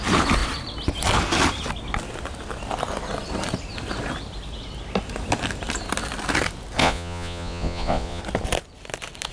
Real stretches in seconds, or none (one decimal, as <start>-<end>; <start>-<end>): 0.0-6.8; 8.2-9.3